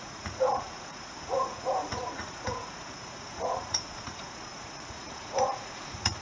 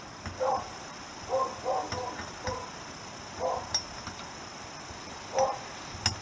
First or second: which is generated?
first